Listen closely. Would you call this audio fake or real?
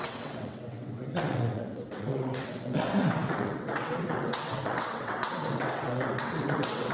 fake